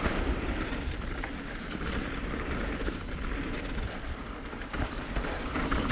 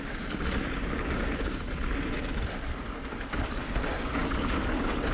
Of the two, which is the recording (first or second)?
second